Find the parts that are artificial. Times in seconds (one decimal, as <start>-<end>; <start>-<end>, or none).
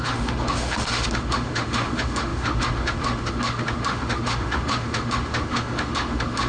0.0-6.5